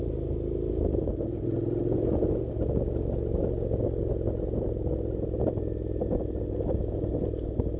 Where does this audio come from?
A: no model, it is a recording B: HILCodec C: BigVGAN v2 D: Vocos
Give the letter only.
A